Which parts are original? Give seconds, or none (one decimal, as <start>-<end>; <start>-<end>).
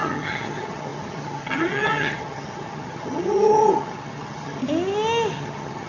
4.6-5.3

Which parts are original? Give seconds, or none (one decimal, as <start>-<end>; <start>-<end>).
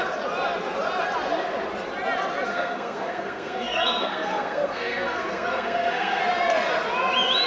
0.0-2.5; 6.2-7.5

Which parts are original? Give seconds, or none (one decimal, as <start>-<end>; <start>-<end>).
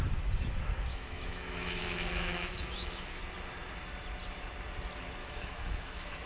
0.0-0.9; 3.2-5.2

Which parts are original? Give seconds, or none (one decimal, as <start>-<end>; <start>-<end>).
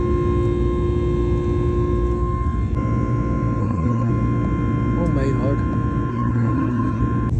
0.0-3.6; 4.1-6.1; 7.0-7.4